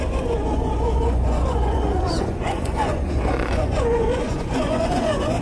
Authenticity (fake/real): fake